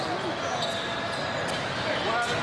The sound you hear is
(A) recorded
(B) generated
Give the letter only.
A